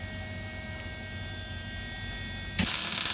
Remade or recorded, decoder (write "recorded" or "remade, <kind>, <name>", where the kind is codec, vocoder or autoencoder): recorded